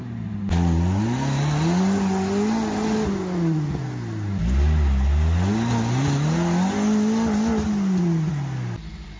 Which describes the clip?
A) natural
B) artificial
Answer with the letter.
A